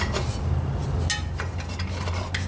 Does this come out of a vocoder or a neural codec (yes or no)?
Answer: no